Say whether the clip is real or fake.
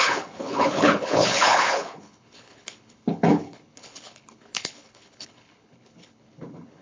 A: fake